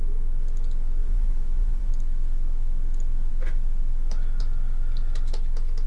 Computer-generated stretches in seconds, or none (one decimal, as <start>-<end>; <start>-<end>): 1.0-1.9